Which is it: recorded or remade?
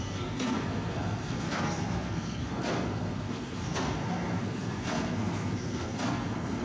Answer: remade